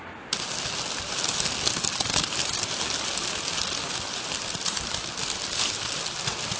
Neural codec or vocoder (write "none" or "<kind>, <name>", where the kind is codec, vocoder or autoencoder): none